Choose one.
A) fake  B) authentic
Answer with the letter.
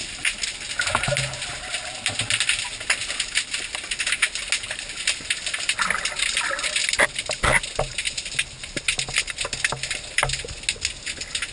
B